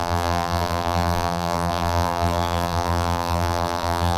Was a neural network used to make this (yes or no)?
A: yes